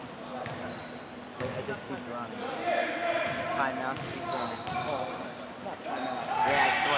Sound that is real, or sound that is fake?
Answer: real